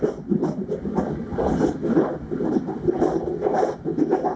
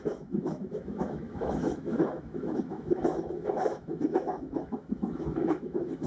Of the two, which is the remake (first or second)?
second